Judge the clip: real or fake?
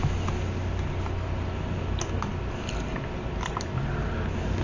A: real